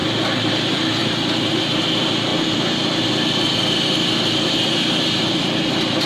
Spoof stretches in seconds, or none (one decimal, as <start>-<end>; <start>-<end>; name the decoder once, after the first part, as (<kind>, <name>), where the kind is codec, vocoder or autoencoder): none